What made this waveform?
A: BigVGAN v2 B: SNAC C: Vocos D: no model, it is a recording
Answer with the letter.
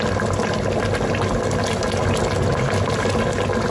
D